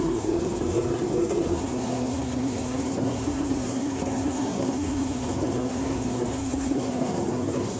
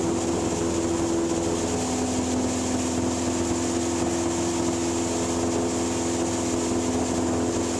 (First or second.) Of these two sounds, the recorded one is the second